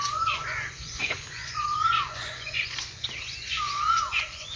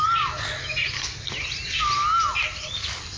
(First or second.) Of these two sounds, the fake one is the first